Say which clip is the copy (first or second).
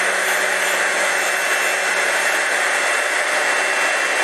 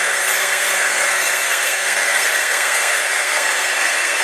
second